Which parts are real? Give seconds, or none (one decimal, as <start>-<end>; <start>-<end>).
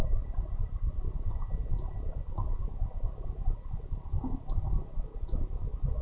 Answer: 0.0-6.0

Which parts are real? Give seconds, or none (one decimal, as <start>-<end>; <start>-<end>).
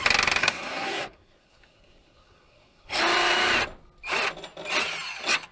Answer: 0.0-0.4; 3.0-5.5